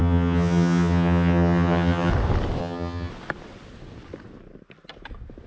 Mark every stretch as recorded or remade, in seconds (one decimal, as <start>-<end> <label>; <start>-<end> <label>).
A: 0.0-2.1 remade; 2.1-2.6 recorded; 2.6-3.1 remade; 3.1-5.5 recorded